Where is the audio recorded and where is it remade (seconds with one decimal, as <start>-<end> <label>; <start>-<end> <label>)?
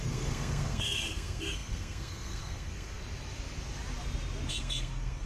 0.0-3.0 remade; 3.0-4.5 recorded; 4.5-5.3 remade